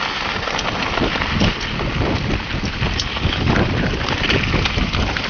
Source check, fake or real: real